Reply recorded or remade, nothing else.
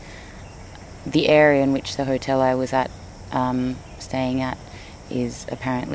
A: recorded